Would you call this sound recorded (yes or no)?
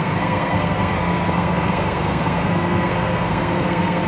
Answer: no